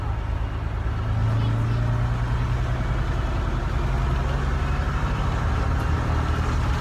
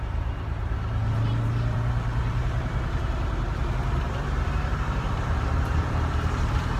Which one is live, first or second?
first